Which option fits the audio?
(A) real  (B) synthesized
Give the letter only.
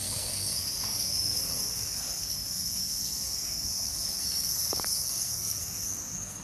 B